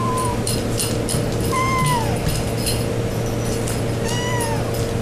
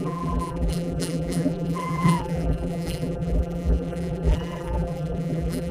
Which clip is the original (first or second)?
first